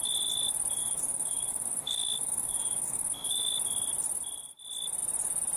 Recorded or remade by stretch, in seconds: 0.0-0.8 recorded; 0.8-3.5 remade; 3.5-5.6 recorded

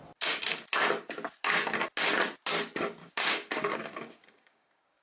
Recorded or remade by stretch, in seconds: 0.0-3.0 recorded; 3.0-5.0 remade

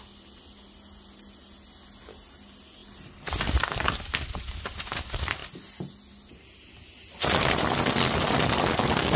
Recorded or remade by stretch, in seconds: 0.0-9.2 recorded